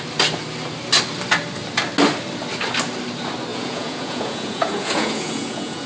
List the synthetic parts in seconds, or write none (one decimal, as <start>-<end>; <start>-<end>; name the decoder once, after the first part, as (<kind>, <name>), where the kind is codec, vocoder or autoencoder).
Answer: 3.5-5.9 (vocoder, Vocos)